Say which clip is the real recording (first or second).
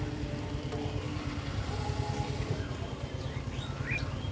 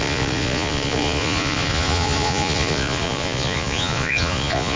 first